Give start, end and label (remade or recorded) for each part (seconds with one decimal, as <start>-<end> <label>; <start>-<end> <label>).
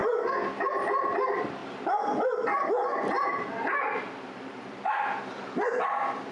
0.0-0.6 recorded; 0.6-6.3 remade